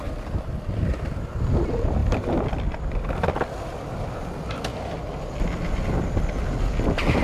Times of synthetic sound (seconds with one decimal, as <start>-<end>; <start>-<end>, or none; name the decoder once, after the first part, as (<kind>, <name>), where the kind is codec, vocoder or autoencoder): none